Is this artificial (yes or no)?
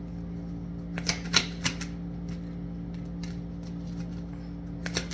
no